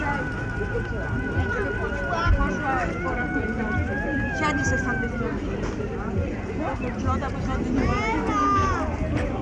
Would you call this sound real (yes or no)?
yes